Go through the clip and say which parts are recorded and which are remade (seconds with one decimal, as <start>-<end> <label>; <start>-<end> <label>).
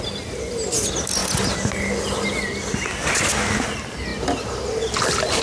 0.0-5.4 recorded